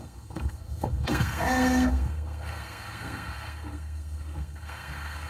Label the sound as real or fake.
fake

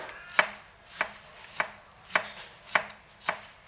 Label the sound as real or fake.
real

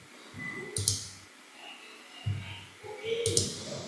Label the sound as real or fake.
real